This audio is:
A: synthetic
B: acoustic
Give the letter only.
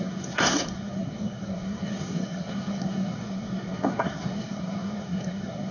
A